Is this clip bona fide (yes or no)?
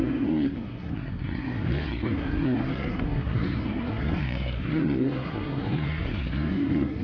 no